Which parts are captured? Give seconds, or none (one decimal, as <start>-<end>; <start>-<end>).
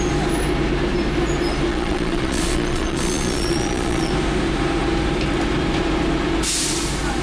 0.0-1.7; 4.1-7.2